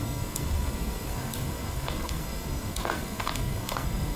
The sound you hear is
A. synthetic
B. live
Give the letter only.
A